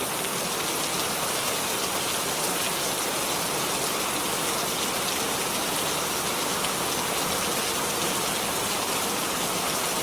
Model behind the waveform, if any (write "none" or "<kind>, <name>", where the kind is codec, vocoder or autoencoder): none